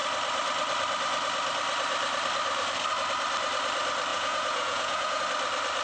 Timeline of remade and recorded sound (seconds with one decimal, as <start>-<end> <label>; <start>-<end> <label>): 0.0-4.1 recorded; 4.1-5.2 remade; 5.2-5.8 recorded